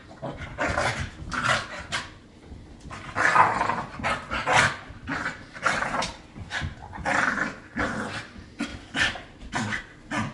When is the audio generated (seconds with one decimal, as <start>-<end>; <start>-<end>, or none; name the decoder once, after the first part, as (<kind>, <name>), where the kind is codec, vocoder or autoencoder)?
5.2-6.1 (vocoder, BigVGAN v2); 8.7-9.5